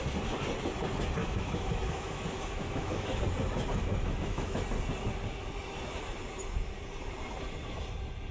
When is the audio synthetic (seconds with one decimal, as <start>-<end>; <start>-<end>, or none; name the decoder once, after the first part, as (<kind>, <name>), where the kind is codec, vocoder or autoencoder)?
1.2-3.2 (autoencoder, DAC-VAE); 3.7-4.6